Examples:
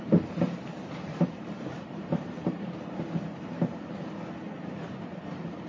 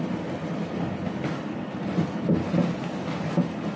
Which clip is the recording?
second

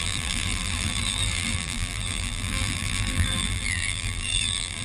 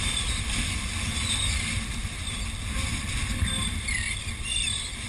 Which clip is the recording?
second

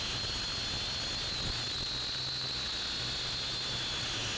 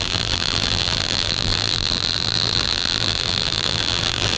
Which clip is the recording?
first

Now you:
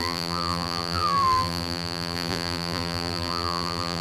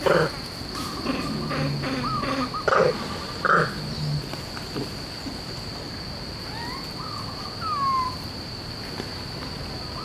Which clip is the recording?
second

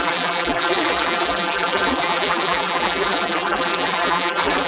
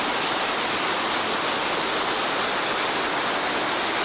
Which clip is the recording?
second